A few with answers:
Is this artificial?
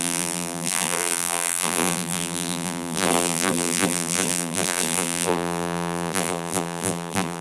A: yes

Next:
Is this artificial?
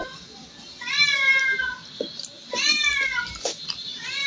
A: yes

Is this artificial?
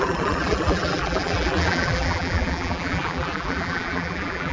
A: yes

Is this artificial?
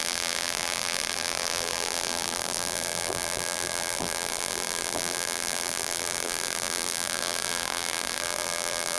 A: yes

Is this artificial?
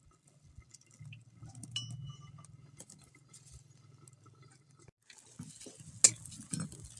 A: no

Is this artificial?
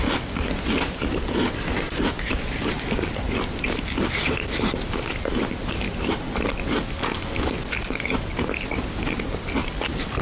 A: no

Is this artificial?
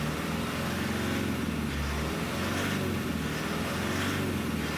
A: no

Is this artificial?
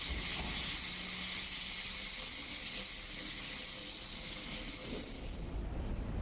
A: no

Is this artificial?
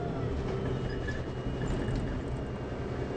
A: no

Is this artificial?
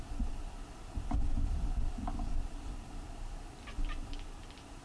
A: yes